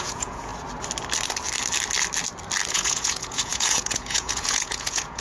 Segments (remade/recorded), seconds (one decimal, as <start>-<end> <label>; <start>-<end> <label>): 0.0-0.5 remade; 0.5-2.7 recorded; 2.7-5.2 remade